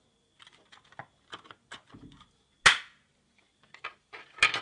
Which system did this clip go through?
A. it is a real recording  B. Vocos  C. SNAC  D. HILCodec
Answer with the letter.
A